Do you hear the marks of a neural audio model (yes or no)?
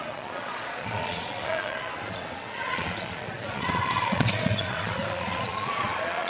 yes